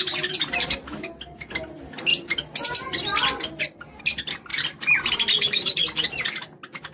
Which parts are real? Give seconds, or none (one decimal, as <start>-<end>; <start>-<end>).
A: 0.0-4.5; 5.8-6.9